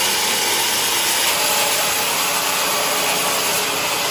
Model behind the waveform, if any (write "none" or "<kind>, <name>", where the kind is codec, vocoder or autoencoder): none